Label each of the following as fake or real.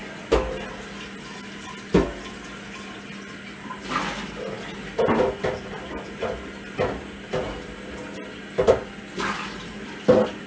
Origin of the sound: real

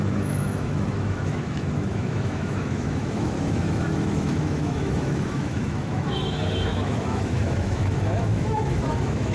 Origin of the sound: fake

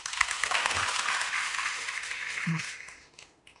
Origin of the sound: fake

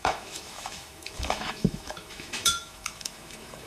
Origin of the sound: fake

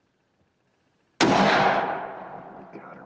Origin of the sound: real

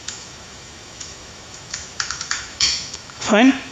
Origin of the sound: fake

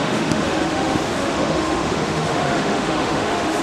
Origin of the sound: fake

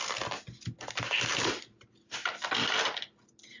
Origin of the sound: real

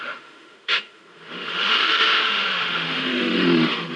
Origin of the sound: fake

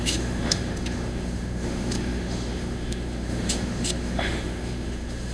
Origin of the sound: fake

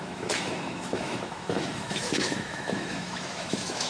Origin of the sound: fake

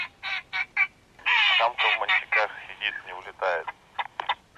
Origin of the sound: real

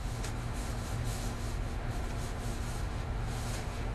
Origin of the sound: fake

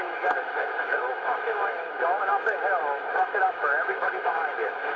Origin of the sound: fake